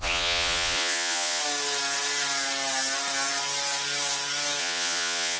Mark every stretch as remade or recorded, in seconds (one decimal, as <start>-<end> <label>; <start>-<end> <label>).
0.0-1.4 remade; 1.4-4.6 recorded; 4.6-5.4 remade